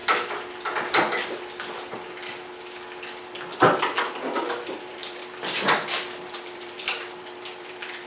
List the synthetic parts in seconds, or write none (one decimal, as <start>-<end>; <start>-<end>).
3.6-8.1